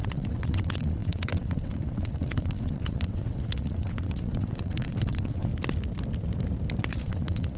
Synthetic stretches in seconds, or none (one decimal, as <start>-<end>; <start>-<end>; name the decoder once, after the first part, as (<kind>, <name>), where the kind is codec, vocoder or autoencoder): 0.0-5.5 (vocoder, WaveNeXt); 6.9-7.6